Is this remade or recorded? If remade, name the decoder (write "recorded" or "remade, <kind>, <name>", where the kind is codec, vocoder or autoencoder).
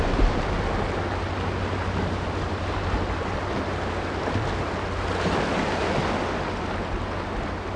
recorded